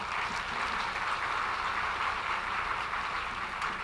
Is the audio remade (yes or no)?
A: no